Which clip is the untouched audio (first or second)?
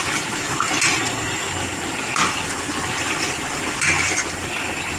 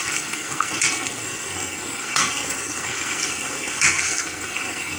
first